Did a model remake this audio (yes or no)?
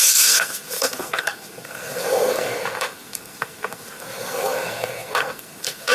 yes